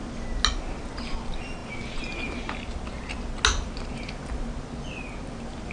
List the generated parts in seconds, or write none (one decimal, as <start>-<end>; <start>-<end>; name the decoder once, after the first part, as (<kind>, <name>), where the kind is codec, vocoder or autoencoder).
none